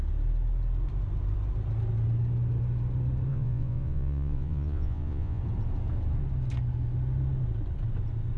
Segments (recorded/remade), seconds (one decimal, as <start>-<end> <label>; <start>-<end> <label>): 0.0-3.3 recorded; 3.3-5.4 remade; 5.4-8.4 recorded